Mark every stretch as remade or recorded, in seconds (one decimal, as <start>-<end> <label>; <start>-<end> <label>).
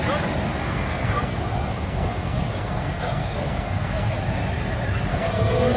0.0-0.6 recorded; 0.6-4.1 remade; 4.1-5.1 recorded; 5.1-5.8 remade